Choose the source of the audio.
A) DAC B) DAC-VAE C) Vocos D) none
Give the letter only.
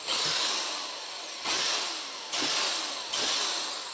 D